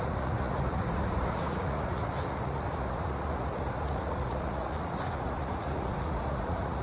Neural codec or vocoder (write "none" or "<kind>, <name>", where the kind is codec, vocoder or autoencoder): vocoder, Vocos